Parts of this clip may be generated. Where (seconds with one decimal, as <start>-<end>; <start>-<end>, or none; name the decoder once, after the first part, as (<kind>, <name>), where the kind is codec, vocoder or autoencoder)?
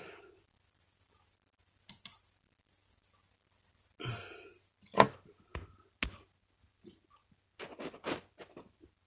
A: none